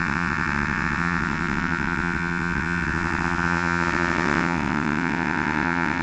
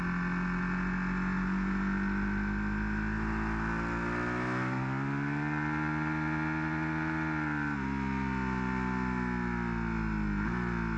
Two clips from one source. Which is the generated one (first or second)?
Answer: first